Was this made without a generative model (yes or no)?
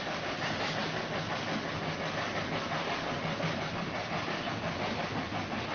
yes